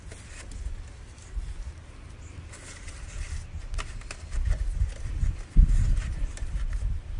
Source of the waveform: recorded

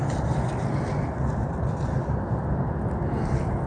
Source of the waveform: recorded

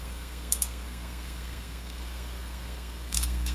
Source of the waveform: remade